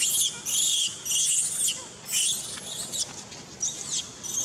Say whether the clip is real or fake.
real